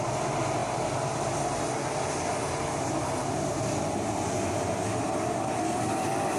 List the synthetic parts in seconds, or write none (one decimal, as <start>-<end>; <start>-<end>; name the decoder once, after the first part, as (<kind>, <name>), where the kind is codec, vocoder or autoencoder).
none